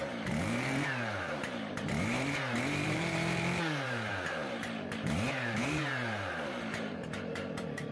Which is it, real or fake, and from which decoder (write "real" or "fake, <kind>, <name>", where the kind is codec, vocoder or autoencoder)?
fake, vocoder, BigVGAN v2